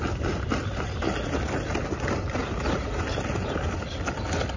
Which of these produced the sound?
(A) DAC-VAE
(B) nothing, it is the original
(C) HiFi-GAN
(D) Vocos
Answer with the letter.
B